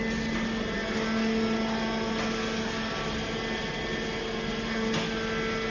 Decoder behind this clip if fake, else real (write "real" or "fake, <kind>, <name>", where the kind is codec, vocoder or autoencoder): real